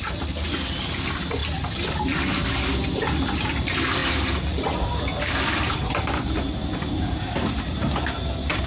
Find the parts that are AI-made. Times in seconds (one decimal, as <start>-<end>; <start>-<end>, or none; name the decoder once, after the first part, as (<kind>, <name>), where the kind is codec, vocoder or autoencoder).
none